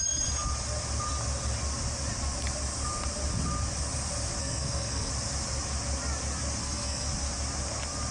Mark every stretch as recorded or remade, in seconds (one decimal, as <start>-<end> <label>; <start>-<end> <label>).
0.0-4.4 recorded; 4.4-5.1 remade; 5.1-6.6 recorded; 6.6-7.1 remade; 7.1-8.1 recorded